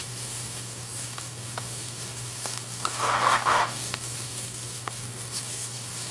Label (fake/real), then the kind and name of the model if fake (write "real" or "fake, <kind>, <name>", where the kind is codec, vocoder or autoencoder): fake, codec, DAC